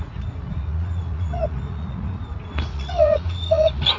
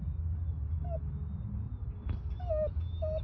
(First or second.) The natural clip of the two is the second